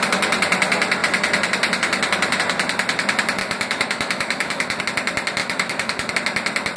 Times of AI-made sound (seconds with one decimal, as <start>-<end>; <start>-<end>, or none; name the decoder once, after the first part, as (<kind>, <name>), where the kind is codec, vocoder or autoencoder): 3.4-4.8 (autoencoder, DAC-VAE); 5.4-6.1